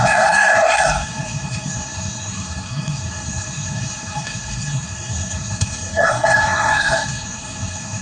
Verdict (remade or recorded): remade